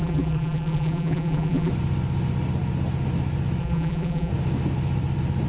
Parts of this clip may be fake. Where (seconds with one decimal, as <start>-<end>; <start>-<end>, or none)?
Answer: 0.0-1.7; 3.6-4.3